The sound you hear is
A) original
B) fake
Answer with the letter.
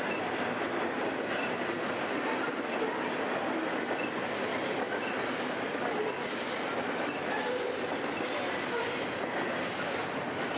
A